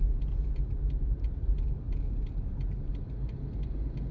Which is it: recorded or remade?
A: recorded